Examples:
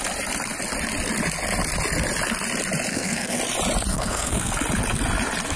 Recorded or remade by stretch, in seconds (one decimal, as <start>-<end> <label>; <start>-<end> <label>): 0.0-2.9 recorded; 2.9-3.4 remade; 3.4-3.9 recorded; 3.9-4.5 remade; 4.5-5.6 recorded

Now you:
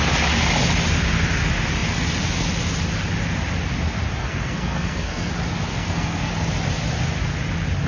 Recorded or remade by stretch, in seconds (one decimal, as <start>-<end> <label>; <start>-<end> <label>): 0.0-4.2 recorded; 4.2-5.3 remade; 5.3-5.7 recorded; 5.7-6.3 remade; 6.3-7.9 recorded

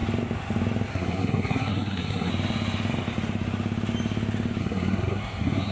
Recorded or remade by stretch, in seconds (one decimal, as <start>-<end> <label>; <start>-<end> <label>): 0.0-0.9 recorded; 0.9-2.3 remade; 2.3-4.6 recorded; 4.6-5.7 remade